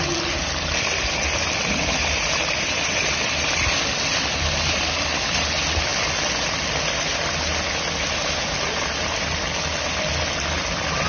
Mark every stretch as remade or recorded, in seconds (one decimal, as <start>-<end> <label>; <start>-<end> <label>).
0.0-11.1 recorded